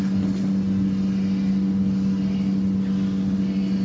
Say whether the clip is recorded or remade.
recorded